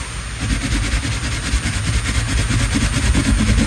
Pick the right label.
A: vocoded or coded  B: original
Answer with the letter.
B